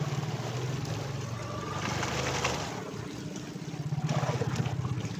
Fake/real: real